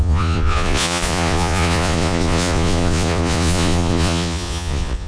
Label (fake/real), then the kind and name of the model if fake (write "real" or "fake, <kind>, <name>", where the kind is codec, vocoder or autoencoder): fake, vocoder, Vocos